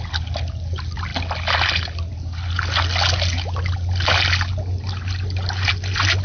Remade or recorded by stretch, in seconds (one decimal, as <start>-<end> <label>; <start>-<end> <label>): 0.0-6.2 recorded